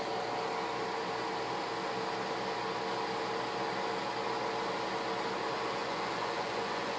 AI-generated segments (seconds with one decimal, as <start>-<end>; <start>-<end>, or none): 5.8-7.0